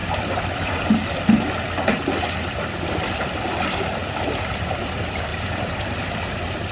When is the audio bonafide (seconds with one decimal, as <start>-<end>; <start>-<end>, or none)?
0.9-5.3; 6.1-6.7